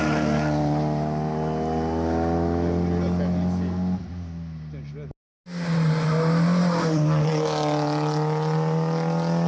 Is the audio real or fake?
real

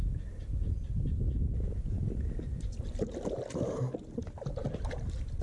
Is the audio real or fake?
real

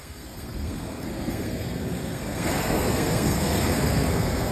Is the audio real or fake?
fake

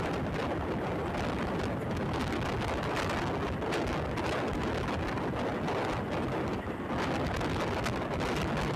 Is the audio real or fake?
real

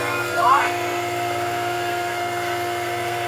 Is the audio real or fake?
fake